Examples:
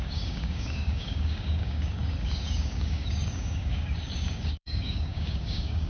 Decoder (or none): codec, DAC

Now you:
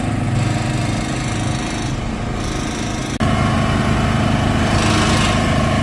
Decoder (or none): none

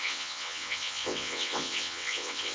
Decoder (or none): vocoder, WaveNeXt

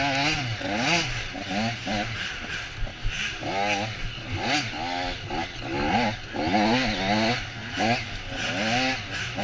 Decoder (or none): none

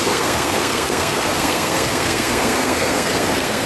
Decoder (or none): codec, SNAC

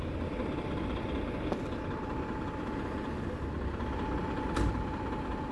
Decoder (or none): vocoder, BigVGAN v2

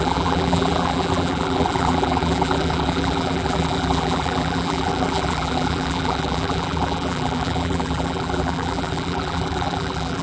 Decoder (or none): vocoder, BigVGAN v2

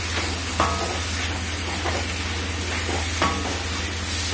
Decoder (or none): none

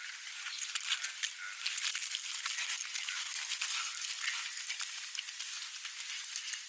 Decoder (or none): none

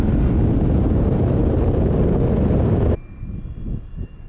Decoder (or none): none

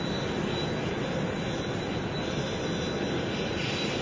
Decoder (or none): none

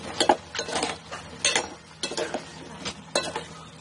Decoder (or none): none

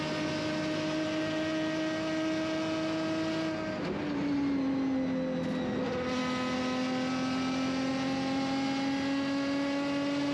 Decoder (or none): none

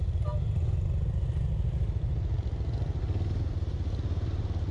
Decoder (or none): none